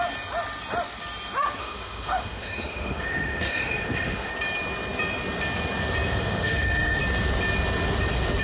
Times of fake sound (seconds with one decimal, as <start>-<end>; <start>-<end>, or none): 1.6-4.3; 6.2-7.0